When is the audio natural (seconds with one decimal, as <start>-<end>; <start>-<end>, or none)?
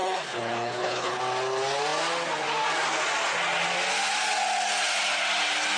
1.2-5.8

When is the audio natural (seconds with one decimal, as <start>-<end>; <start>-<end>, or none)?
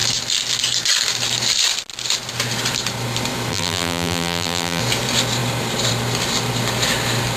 0.0-3.5; 4.8-7.4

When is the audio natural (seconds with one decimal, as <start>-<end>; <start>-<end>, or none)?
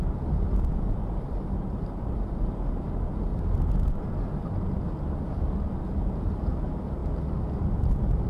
0.0-1.0; 2.5-8.3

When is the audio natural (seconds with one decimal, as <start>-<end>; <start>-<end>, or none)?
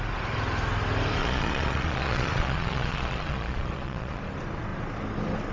0.0-1.2; 4.2-5.5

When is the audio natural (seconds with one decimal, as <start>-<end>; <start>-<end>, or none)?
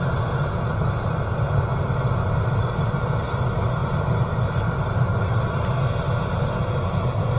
0.0-7.4